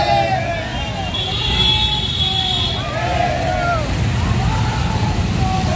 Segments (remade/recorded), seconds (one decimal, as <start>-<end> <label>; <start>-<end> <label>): 0.0-5.8 recorded